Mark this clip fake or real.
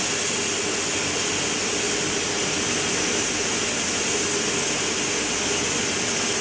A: real